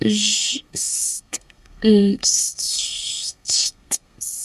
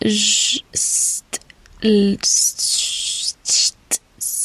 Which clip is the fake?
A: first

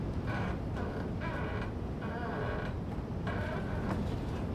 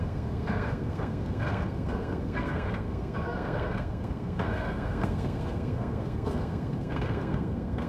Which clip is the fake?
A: second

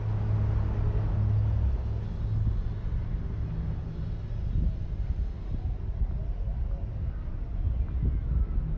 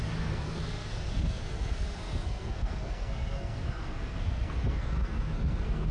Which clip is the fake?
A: second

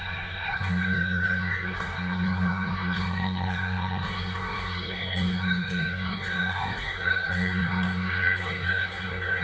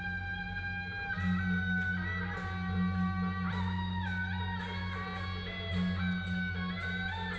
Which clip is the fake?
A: first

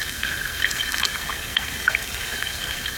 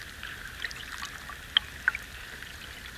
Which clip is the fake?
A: first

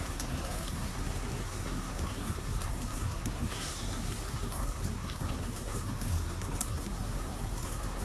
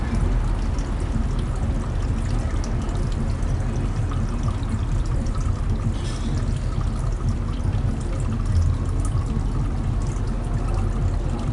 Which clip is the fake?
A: first